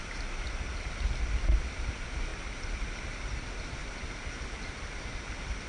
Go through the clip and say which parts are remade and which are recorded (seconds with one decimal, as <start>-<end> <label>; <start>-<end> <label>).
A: 0.0-5.7 recorded